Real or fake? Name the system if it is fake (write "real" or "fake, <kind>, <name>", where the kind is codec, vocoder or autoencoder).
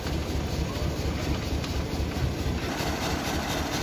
real